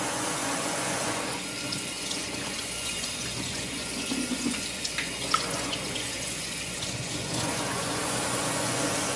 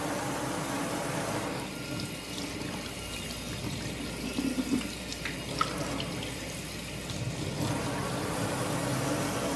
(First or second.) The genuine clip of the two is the second